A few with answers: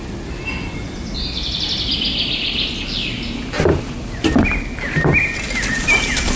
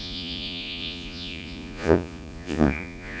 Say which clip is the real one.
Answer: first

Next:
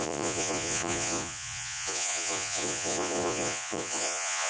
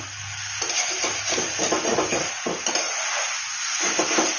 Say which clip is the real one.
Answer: second